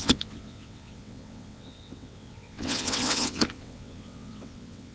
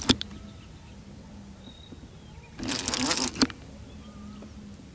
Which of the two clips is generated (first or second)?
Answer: first